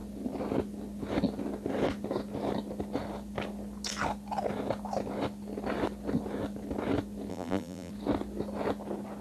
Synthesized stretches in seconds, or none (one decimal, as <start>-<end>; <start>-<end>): 7.3-7.9